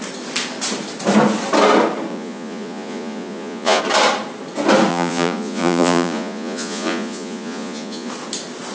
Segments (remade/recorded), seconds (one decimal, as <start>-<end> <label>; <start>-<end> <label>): 0.0-2.1 recorded; 2.1-3.8 remade; 3.8-4.9 recorded; 4.9-8.1 remade; 8.1-8.7 recorded